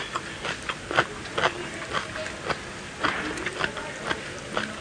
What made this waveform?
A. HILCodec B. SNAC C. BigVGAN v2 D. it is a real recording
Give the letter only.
D